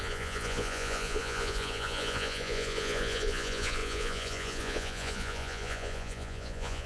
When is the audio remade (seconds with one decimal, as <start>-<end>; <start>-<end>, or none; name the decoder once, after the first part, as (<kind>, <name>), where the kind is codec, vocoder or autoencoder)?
0.0-6.9 (vocoder, Vocos)